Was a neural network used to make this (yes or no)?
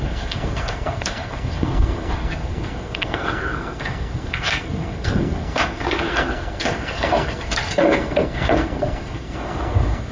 yes